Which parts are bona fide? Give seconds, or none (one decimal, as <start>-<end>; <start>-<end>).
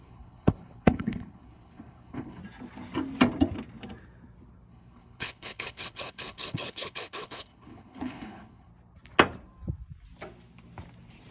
2.4-4.7; 8.7-11.3